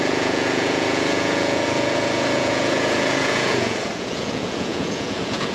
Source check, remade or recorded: remade